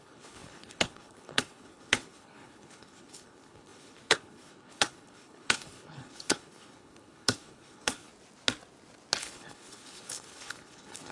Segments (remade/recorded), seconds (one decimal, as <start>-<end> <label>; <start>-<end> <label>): 0.0-8.1 remade; 8.1-9.2 recorded; 9.2-11.1 remade